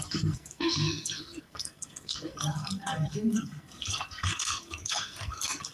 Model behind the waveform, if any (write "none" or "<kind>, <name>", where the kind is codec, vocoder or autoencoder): codec, SNAC